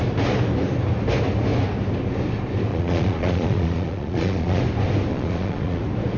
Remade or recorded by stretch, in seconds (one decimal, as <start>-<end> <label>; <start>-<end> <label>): 0.0-2.7 recorded; 2.7-4.6 remade; 4.6-5.1 recorded; 5.1-5.8 remade; 5.8-6.2 recorded